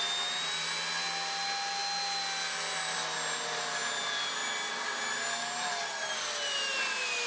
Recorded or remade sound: recorded